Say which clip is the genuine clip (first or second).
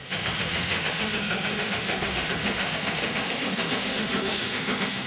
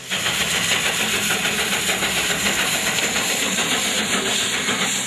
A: second